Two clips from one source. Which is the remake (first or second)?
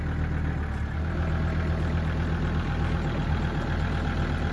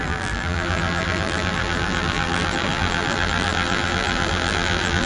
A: second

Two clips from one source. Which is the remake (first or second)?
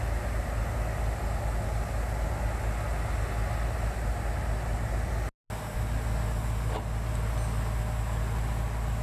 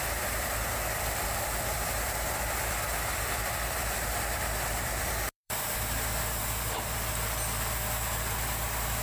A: second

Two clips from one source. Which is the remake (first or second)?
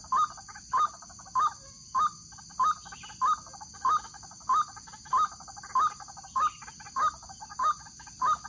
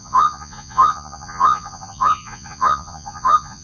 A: second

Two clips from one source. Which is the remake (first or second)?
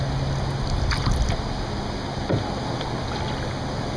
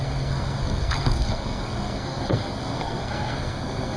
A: second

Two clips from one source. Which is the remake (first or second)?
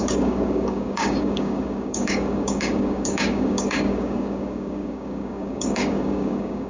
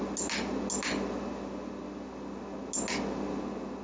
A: first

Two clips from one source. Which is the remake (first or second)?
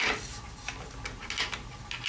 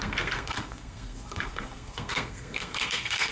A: second